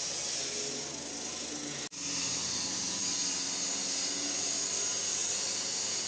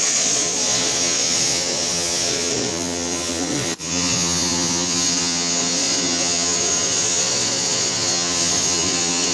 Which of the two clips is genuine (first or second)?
first